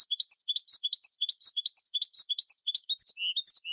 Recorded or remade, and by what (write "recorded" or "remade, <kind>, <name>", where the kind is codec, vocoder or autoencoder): recorded